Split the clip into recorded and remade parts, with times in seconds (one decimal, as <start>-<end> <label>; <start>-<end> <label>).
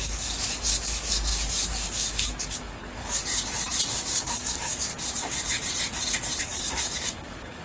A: 0.0-3.2 remade; 3.2-3.9 recorded; 3.9-4.9 remade; 4.9-6.4 recorded; 6.4-7.6 remade